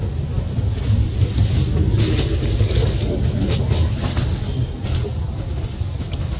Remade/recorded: recorded